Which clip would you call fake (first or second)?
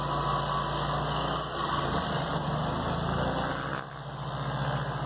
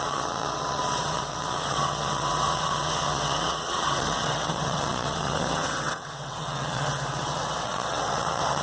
second